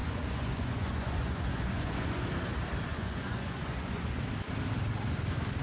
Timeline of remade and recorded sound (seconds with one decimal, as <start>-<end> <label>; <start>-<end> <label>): 0.0-2.3 remade; 2.3-2.9 recorded; 2.9-4.2 remade; 4.2-5.6 recorded